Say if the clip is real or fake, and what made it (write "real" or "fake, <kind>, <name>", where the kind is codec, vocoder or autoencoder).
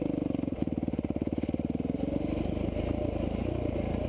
real